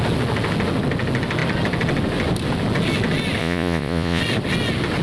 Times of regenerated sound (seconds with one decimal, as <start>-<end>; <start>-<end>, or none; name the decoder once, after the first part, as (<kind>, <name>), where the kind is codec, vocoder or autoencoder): 3.4-4.2 (vocoder, Vocos)